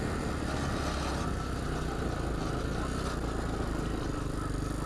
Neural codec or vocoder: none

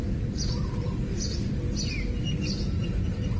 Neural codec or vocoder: none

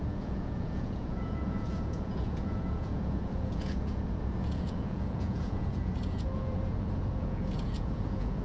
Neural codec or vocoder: vocoder, Vocos